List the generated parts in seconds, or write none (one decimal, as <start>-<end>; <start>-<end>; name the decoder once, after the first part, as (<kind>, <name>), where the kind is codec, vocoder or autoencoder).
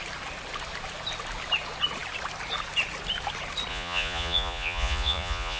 3.7-5.6 (vocoder, Vocos)